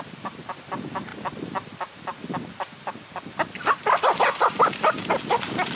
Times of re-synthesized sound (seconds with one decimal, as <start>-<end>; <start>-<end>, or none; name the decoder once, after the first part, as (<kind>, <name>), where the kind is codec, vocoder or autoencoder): 0.0-5.8 (vocoder, BigVGAN v2)